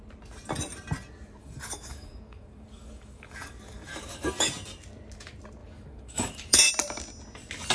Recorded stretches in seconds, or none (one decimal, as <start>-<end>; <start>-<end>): 0.0-1.4; 4.5-5.6; 6.7-7.7